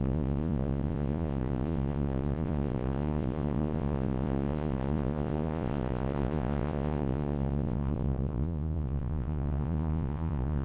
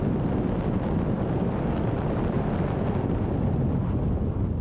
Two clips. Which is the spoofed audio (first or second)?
first